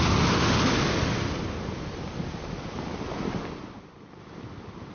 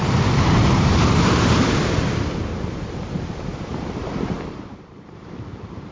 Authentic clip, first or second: first